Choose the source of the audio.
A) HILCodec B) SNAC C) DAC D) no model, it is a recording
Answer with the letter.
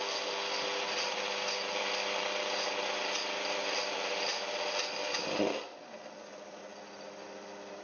D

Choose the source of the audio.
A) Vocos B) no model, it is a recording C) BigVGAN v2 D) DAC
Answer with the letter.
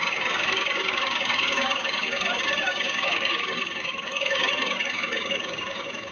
D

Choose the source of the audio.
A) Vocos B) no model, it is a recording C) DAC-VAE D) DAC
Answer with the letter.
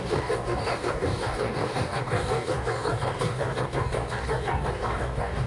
D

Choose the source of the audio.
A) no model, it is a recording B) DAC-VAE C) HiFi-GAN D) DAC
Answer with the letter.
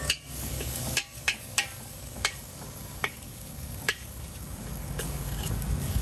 D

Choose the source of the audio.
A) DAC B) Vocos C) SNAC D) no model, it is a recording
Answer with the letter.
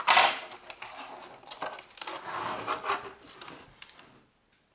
D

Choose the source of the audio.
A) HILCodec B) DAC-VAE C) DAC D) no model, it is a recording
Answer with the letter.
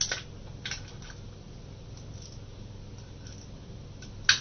D